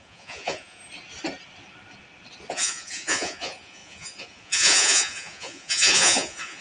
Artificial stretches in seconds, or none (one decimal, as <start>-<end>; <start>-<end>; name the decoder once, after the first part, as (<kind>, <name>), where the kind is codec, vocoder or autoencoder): 0.0-0.8 (vocoder, Vocos); 2.5-6.6

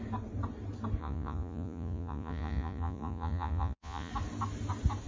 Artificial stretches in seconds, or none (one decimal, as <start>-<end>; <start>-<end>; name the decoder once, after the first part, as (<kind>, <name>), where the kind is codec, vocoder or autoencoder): 1.0-4.1 (vocoder, Vocos)

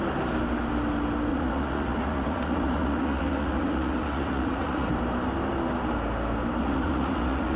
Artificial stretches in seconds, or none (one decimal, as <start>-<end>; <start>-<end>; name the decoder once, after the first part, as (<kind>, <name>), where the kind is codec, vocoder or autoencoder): 1.3-4.9 (vocoder, Vocos); 6.6-7.6

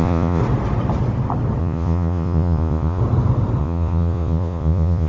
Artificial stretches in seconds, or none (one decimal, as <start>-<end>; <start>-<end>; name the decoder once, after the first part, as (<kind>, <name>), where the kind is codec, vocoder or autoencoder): 0.0-0.4 (vocoder, Vocos); 1.6-3.0; 3.6-5.1

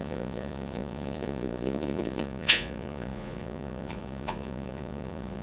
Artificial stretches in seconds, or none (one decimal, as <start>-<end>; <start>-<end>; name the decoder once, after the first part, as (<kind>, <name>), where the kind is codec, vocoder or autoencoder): 0.0-5.4 (vocoder, Vocos)